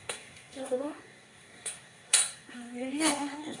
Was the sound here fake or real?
fake